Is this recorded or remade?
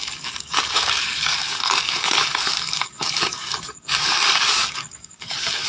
remade